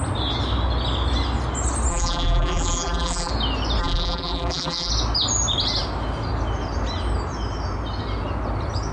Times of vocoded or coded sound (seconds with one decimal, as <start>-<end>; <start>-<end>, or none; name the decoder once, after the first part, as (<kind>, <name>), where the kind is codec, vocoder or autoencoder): 1.9-3.3 (vocoder, BigVGAN v2); 3.8-4.9

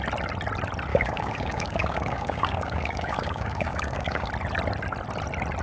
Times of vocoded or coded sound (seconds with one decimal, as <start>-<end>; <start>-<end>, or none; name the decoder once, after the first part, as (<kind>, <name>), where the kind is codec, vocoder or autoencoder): 0.9-4.3 (codec, DAC)

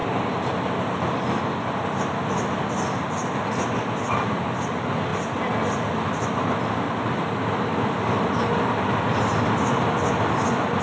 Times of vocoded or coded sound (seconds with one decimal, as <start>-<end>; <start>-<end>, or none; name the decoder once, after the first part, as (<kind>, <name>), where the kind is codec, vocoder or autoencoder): none

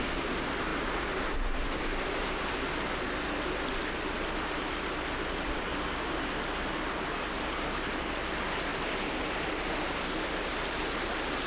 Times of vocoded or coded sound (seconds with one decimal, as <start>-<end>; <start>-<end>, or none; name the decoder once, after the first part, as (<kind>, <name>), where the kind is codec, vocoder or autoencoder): 8.7-10.7 (vocoder, BigVGAN v2)

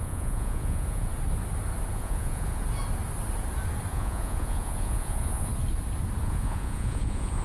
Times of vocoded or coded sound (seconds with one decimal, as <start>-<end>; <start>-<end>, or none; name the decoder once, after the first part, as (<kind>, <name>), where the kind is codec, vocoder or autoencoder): 0.0-1.1 (vocoder, Vocos); 1.9-2.6; 3.9-5.5; 6.2-7.4

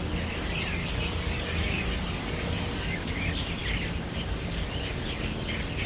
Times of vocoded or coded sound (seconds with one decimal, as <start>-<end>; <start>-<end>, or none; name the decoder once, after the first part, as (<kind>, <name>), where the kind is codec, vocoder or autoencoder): 0.8-3.1 (codec, DAC)